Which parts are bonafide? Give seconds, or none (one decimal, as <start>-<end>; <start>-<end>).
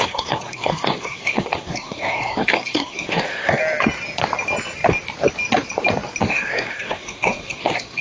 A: 3.6-6.2